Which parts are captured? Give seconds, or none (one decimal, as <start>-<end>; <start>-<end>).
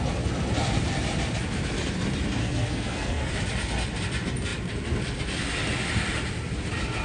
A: 0.0-2.4; 3.3-7.0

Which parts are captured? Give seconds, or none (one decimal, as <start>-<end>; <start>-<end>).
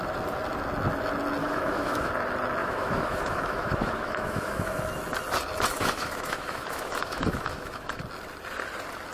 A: 0.0-1.4; 2.1-2.6; 4.8-5.7; 8.0-9.1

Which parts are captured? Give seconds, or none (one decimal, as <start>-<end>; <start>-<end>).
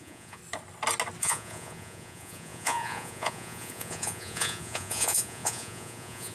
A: 0.4-1.2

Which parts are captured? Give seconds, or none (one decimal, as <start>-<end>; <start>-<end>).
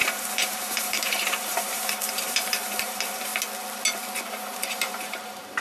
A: 3.3-4.3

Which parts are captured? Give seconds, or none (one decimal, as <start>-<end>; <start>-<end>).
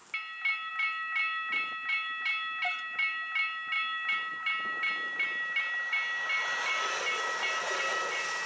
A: 0.0-8.5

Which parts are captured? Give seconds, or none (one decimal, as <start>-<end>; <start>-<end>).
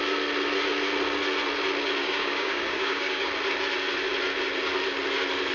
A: 0.0-2.0; 3.3-5.5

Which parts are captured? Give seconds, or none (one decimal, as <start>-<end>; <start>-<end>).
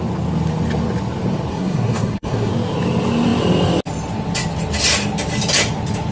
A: 0.0-1.5; 2.5-6.1